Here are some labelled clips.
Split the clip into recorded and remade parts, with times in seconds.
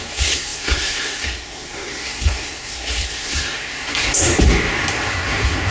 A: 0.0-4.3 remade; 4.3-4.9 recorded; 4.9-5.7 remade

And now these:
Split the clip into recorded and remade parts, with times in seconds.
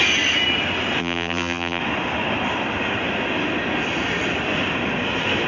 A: 0.0-1.0 recorded; 1.0-1.8 remade; 1.8-5.5 recorded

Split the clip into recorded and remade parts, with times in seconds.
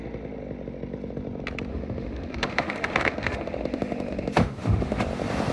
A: 0.0-1.7 recorded; 1.7-5.0 remade; 5.0-5.5 recorded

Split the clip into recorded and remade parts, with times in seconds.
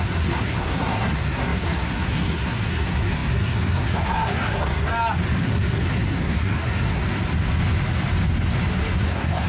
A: 0.0-4.9 remade; 4.9-5.4 recorded; 5.4-7.0 remade; 7.0-9.0 recorded; 9.0-9.5 remade